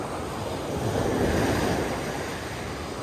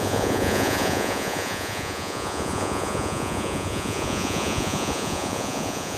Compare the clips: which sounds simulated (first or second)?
second